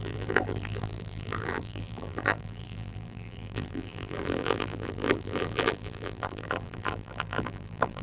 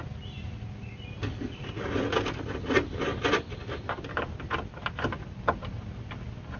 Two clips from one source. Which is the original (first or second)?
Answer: second